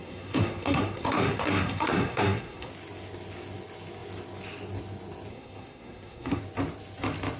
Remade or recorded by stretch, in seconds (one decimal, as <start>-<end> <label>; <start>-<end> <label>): 0.0-2.7 remade; 2.7-5.3 recorded; 5.3-6.4 remade; 6.4-7.4 recorded